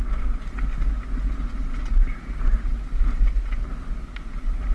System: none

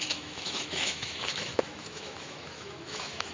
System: autoencoder, DAC-VAE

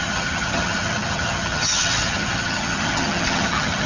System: vocoder, HiFi-GAN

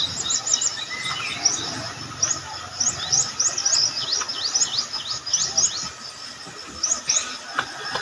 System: none